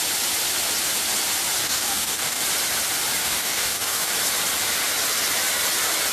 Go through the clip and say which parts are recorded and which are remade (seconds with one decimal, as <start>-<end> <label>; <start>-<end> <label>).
0.0-1.6 recorded; 1.6-2.4 remade; 2.4-3.2 recorded; 3.2-4.1 remade; 4.1-6.1 recorded